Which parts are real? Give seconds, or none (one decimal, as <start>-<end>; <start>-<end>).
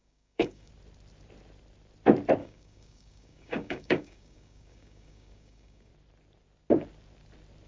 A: 0.7-2.4; 5.9-7.7